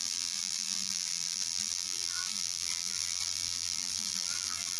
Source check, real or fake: fake